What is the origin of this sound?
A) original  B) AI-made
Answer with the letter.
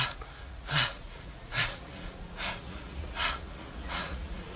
B